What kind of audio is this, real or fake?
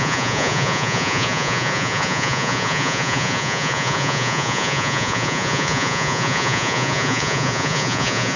fake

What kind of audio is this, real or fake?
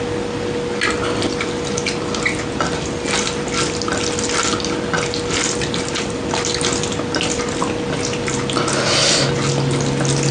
real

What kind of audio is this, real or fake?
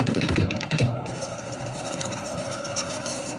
fake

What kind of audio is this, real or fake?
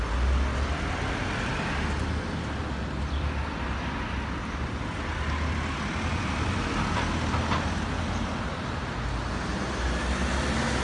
real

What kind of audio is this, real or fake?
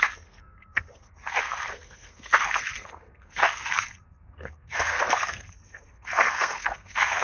fake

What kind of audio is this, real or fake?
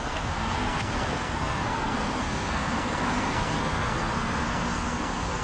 fake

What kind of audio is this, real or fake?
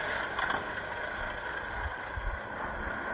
real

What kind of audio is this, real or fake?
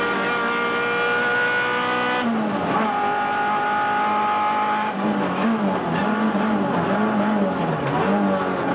real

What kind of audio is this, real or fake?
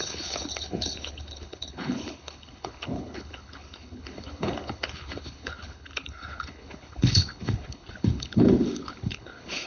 fake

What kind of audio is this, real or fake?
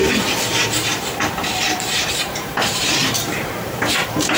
fake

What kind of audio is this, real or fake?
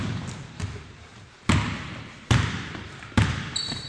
fake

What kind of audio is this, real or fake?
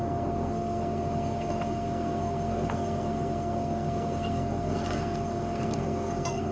fake